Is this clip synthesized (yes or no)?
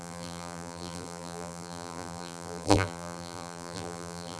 yes